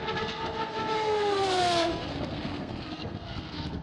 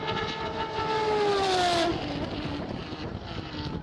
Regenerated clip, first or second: first